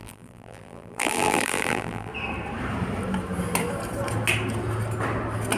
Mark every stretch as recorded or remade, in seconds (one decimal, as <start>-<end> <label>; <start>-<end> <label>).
0.0-2.1 remade; 2.1-5.6 recorded